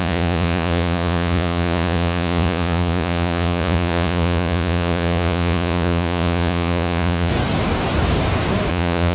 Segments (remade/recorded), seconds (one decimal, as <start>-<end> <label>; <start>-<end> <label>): 0.0-7.3 remade; 7.3-8.7 recorded; 8.7-9.1 remade